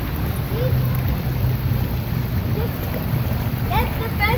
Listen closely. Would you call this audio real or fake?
real